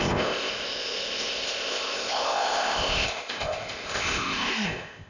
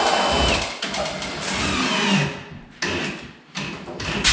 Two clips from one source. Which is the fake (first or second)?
first